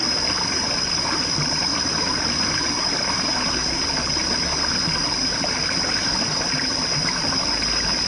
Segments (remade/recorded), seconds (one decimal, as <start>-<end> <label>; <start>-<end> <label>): 0.0-8.1 recorded